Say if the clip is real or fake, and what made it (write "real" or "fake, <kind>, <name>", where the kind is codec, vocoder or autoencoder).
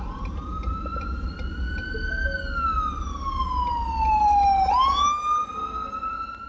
real